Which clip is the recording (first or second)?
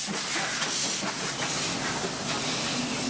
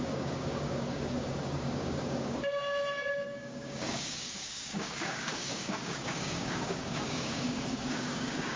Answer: first